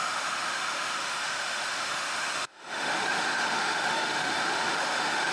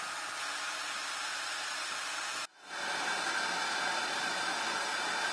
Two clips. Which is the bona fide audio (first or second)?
second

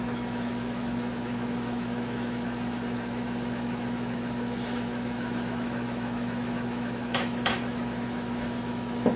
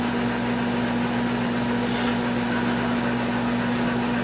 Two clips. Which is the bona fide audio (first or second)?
second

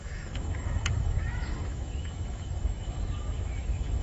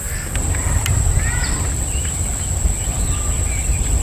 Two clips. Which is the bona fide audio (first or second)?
second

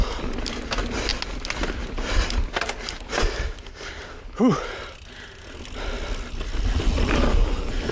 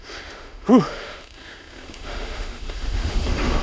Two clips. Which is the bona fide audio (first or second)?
first